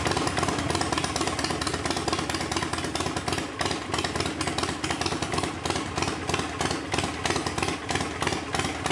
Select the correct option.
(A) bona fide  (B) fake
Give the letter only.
A